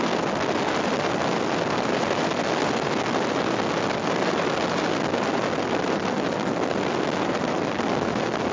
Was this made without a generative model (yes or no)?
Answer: yes